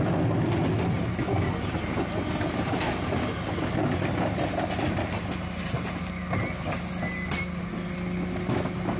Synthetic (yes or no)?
no